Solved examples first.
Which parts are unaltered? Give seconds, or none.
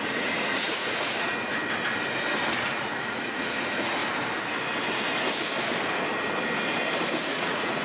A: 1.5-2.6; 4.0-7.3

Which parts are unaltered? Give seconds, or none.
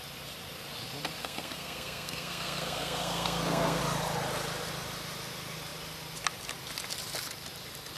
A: 0.0-1.2; 3.8-8.0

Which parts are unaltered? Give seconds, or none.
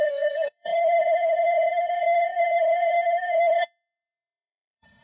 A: none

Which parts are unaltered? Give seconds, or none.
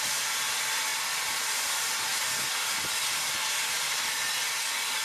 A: 0.0-5.0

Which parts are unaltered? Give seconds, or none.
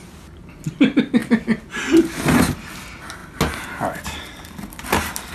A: 0.0-5.3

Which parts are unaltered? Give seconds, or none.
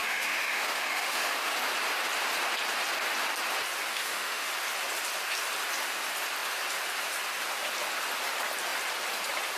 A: 1.5-3.9; 4.5-9.6